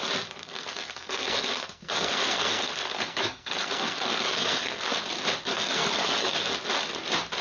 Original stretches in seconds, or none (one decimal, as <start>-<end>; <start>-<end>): 0.0-0.4; 4.8-5.5; 6.6-7.4